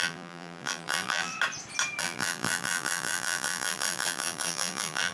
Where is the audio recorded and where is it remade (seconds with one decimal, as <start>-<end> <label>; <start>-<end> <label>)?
0.0-1.3 remade; 1.3-2.0 recorded; 2.0-5.1 remade